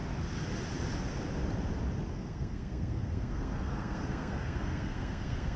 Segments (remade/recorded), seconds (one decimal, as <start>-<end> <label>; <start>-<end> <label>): 0.0-2.1 recorded; 2.1-5.6 remade